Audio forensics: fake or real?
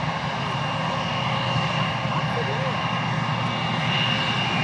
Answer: real